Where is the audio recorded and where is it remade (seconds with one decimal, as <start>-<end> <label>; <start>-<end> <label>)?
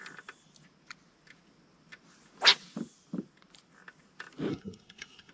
0.0-4.5 recorded; 4.5-5.3 remade